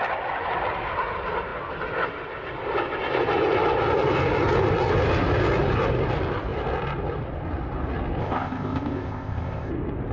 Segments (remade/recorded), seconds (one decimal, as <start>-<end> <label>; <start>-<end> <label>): 0.0-8.2 recorded; 8.2-9.7 remade; 9.7-10.1 recorded